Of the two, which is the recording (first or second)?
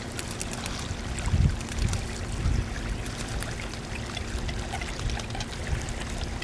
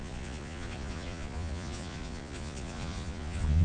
first